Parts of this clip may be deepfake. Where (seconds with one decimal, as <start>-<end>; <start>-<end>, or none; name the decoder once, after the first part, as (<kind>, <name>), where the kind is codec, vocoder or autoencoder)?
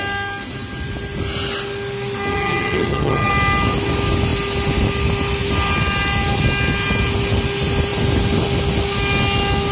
2.3-3.3 (vocoder, HiFi-GAN)